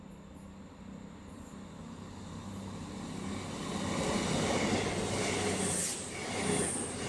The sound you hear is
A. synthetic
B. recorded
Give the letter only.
B